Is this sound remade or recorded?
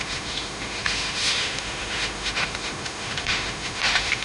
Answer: remade